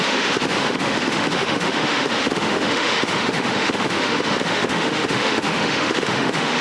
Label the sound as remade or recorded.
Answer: remade